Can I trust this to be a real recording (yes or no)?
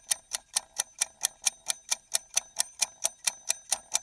no